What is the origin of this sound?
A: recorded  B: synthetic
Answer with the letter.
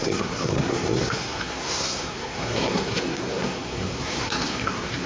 B